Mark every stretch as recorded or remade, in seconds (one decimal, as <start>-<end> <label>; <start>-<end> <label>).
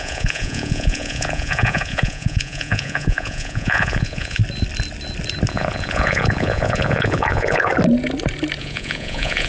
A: 0.0-4.4 remade; 4.4-5.5 recorded; 5.5-7.7 remade; 7.7-8.6 recorded; 8.6-9.5 remade